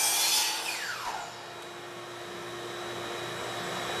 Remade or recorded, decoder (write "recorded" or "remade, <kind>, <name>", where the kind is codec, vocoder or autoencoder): recorded